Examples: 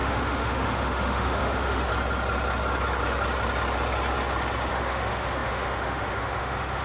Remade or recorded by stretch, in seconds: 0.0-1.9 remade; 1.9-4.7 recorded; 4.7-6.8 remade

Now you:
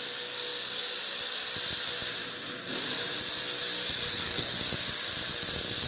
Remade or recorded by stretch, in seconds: 0.0-4.1 recorded; 4.1-4.6 remade; 4.6-5.9 recorded

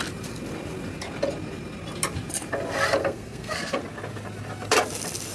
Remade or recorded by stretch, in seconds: 0.0-3.0 recorded; 3.0-3.8 remade; 3.8-5.3 recorded